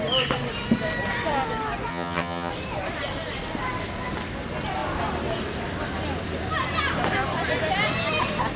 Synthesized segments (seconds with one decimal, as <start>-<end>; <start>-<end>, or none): 1.9-2.5